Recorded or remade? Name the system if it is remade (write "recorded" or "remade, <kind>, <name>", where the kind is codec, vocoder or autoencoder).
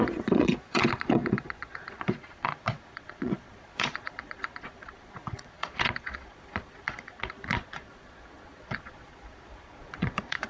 remade, vocoder, Vocos